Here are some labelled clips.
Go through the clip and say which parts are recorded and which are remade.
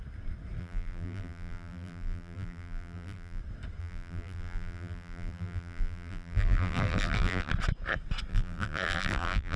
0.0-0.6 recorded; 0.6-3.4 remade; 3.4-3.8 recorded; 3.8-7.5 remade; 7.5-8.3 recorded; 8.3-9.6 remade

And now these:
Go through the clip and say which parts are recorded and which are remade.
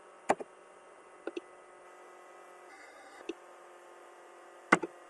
0.0-2.7 recorded; 2.7-3.2 remade; 3.2-5.1 recorded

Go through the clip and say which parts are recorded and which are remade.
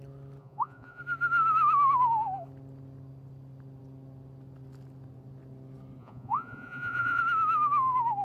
0.0-0.4 recorded; 0.4-1.0 remade; 1.0-6.0 recorded; 6.0-7.2 remade; 7.2-8.2 recorded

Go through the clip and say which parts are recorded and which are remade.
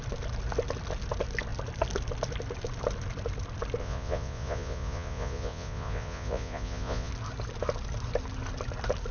0.0-3.8 recorded; 3.8-7.1 remade; 7.1-9.1 recorded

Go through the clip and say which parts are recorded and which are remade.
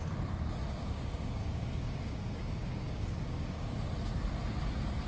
0.0-0.6 recorded; 0.6-3.7 remade; 3.7-5.1 recorded